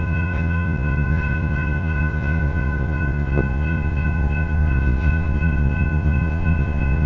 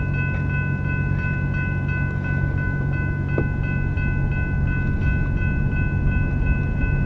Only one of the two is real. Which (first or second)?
second